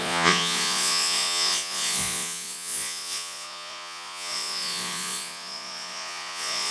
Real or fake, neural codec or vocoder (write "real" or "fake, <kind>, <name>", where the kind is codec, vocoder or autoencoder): fake, vocoder, Vocos